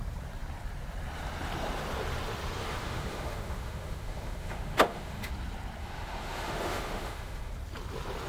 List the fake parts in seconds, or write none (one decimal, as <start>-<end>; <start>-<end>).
2.6-5.3; 5.8-7.5